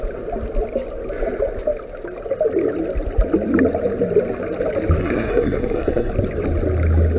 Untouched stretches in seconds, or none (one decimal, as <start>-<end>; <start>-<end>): 0.0-5.0; 6.1-7.2